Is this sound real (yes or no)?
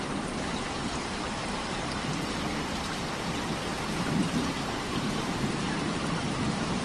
no